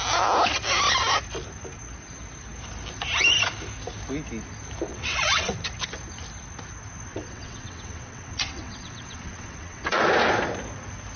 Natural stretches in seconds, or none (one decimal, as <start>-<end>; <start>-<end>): 0.0-4.9; 5.5-7.1; 10.0-11.2